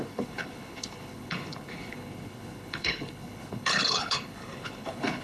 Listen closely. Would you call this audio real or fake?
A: fake